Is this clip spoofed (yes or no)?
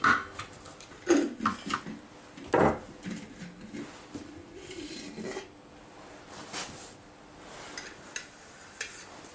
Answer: no